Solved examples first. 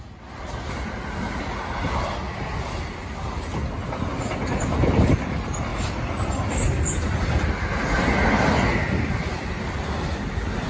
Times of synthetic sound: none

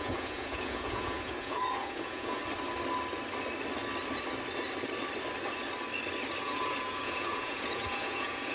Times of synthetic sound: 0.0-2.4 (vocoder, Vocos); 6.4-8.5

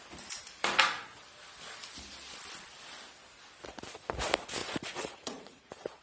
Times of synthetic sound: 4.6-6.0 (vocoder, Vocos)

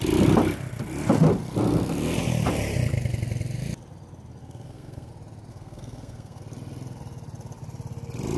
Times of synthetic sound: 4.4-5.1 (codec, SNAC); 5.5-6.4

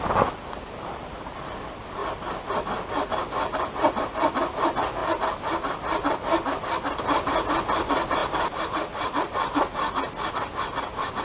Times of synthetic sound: none

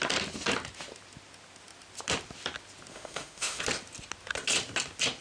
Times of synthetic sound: 2.9-3.6 (autoencoder, DAC-VAE)